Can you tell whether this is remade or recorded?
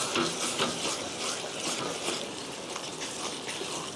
recorded